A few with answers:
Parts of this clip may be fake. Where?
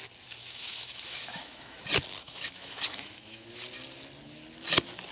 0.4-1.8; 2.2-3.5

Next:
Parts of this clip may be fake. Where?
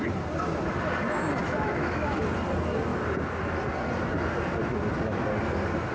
1.4-2.2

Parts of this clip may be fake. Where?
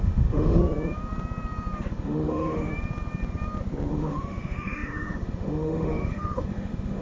0.0-0.6; 1.9-2.7; 3.9-7.0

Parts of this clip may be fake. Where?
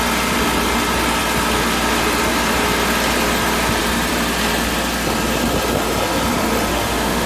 6.7-7.3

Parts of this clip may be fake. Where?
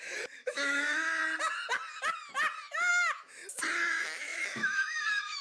0.0-1.2; 2.9-3.4; 3.9-5.4